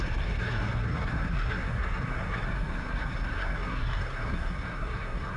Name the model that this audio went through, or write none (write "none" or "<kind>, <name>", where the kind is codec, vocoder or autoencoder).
codec, SNAC